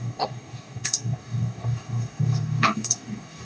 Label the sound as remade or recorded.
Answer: remade